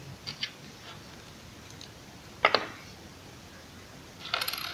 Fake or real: real